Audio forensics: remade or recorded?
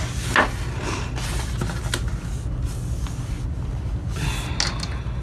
recorded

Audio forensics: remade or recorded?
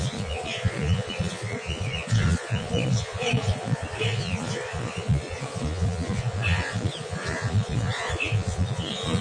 remade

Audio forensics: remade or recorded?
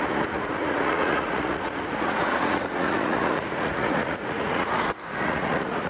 remade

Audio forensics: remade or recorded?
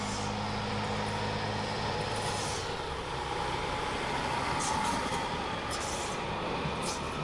recorded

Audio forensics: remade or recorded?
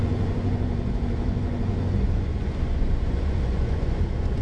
remade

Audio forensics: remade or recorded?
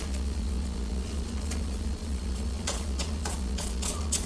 remade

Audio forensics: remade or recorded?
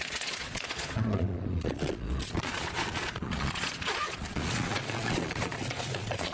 remade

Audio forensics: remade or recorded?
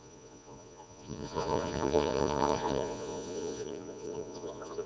remade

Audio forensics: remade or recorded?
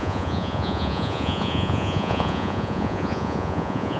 remade